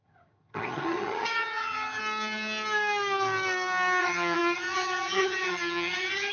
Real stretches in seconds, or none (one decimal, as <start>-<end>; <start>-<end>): 2.0-4.0